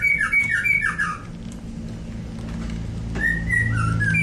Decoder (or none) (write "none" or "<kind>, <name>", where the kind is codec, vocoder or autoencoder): none